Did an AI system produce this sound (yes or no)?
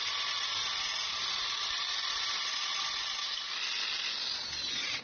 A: no